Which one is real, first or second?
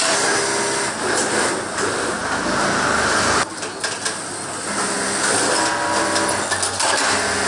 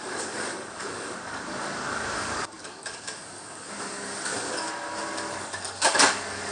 first